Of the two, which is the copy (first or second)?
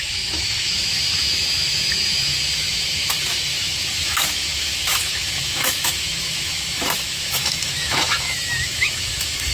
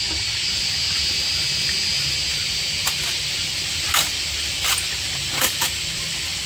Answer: first